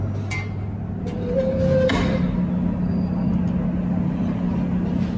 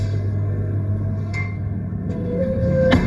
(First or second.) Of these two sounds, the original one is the first